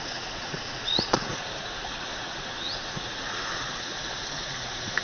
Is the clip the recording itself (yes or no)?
no